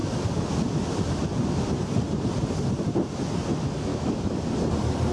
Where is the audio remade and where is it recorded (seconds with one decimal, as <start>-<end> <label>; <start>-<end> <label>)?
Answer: 0.0-3.9 recorded; 3.9-4.4 remade; 4.4-5.1 recorded